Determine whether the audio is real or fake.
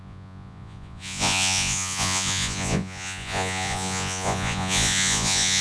fake